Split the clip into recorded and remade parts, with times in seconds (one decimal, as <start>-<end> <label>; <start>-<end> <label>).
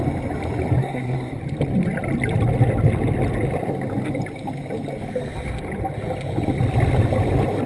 0.0-0.8 recorded; 0.8-1.4 remade; 1.4-7.7 recorded